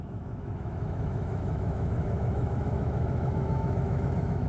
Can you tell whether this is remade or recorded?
remade